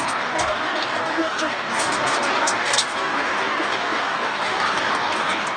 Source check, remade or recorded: remade